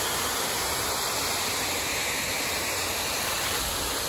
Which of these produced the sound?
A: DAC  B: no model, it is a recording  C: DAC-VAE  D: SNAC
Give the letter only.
B